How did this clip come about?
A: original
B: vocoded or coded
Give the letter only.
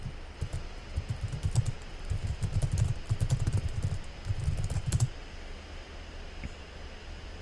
A